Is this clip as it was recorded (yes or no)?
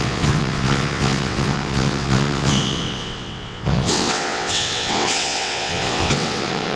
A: no